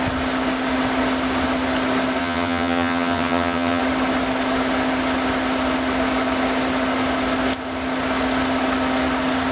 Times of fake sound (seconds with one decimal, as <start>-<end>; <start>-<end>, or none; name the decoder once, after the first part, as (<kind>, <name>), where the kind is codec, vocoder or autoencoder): 2.2-3.8 (vocoder, HiFi-GAN)